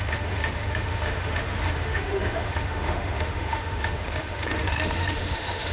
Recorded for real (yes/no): no